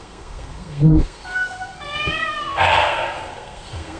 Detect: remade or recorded remade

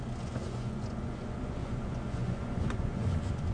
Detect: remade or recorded remade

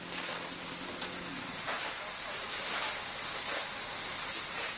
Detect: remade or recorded recorded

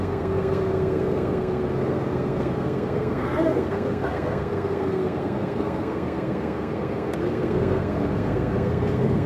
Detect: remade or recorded remade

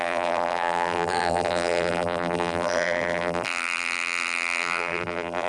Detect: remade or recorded remade